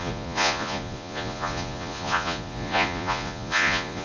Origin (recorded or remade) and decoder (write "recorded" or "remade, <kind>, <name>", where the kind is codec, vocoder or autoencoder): remade, vocoder, Vocos